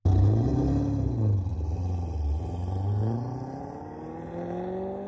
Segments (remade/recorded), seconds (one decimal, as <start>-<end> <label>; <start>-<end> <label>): 0.0-5.1 recorded